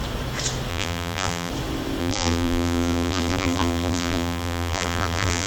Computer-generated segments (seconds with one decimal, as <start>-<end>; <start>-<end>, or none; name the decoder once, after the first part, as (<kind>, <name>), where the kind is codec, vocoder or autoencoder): 0.7-1.5 (vocoder, BigVGAN v2); 2.0-5.5